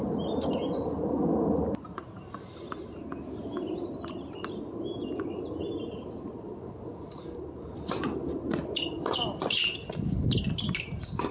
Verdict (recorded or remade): recorded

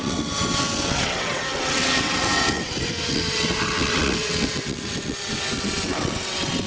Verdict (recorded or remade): remade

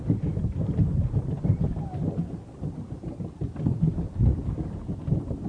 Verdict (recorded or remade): recorded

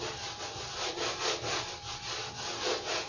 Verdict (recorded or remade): recorded